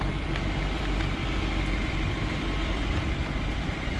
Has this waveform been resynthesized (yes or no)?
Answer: yes